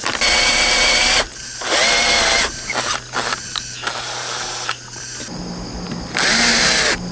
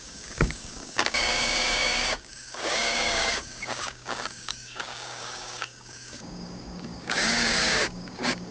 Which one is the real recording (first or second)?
first